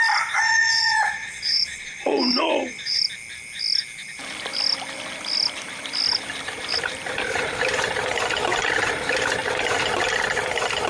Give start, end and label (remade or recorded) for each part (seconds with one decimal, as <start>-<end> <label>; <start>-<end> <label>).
0.0-0.4 recorded; 0.4-3.0 remade; 3.0-10.9 recorded